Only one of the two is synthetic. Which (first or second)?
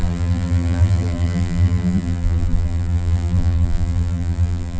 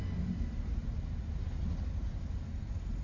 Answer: first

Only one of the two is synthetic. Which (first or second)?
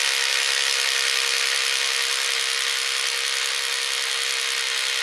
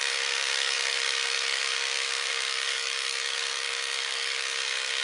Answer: second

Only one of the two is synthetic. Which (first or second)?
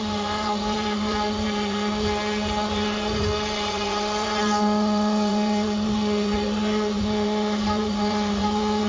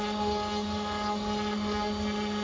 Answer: first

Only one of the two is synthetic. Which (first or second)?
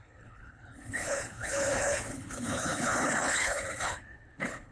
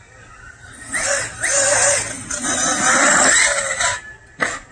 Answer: first